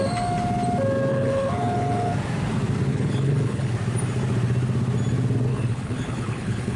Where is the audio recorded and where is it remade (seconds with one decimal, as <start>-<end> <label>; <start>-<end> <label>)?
0.0-1.1 recorded; 1.1-2.1 remade; 2.1-2.9 recorded; 2.9-3.7 remade; 3.7-5.5 recorded; 5.5-6.8 remade